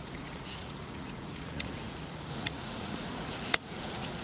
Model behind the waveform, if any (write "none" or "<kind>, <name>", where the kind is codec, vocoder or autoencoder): vocoder, Vocos